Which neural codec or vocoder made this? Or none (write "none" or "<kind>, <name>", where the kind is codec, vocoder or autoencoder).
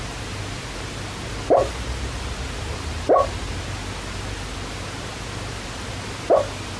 none